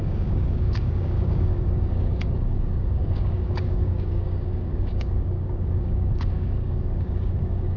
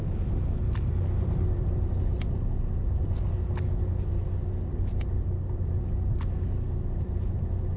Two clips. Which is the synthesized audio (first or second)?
first